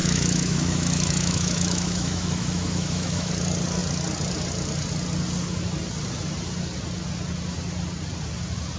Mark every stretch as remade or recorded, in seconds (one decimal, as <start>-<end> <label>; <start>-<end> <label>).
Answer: 0.0-3.3 remade; 3.3-8.8 recorded